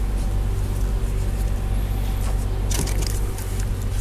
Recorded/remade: recorded